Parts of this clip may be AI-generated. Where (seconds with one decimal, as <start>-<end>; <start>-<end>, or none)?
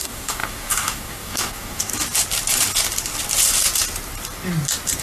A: 0.0-1.9